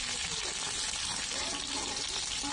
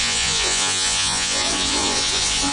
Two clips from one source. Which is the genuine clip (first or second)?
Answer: first